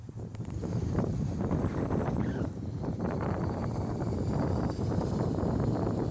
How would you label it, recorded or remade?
remade